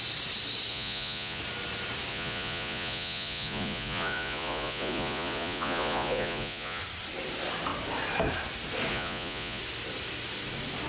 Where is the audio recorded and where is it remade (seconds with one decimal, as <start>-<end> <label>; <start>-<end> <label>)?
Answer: 0.0-0.7 recorded; 0.7-1.4 remade; 1.4-2.1 recorded; 2.1-6.8 remade; 6.8-8.9 recorded; 8.9-9.6 remade; 9.6-10.9 recorded